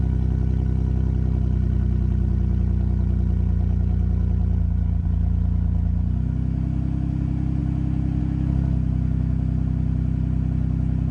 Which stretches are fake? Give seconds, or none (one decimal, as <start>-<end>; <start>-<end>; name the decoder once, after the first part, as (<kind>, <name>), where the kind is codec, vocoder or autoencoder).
none